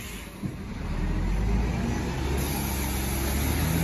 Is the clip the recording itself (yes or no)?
yes